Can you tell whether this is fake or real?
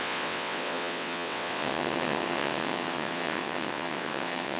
fake